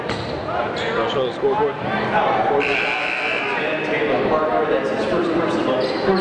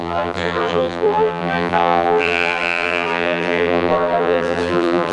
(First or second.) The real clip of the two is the first